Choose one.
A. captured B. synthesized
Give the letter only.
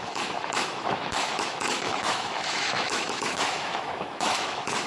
B